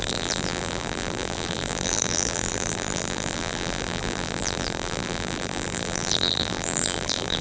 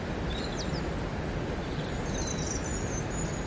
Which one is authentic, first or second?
second